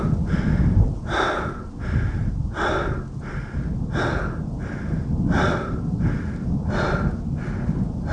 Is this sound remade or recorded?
recorded